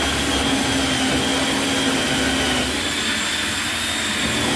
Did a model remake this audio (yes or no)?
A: no